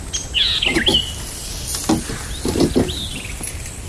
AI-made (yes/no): no